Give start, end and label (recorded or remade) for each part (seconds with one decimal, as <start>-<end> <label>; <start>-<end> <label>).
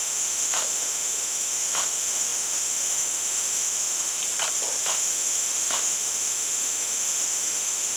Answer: 0.0-4.2 remade; 4.2-4.8 recorded; 4.8-8.0 remade